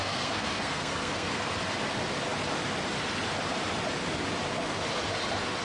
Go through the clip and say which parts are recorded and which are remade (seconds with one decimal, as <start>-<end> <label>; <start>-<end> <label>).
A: 0.0-1.4 remade; 1.4-5.6 recorded